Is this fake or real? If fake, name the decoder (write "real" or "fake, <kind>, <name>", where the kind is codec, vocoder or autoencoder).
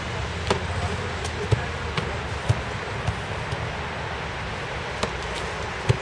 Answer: real